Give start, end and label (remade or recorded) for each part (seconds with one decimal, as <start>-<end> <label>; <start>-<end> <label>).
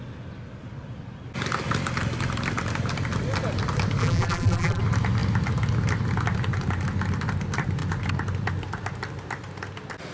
0.0-4.0 recorded; 4.0-4.8 remade; 4.8-10.1 recorded